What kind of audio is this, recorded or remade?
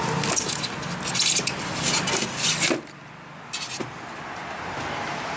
recorded